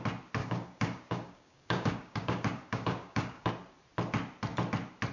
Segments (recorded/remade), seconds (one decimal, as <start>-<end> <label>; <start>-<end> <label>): 0.0-0.4 recorded; 0.4-3.5 remade; 3.5-5.1 recorded